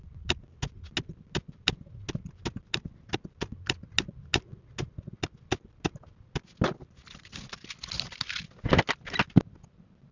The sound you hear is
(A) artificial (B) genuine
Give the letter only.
B